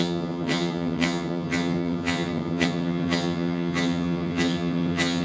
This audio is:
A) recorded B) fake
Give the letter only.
B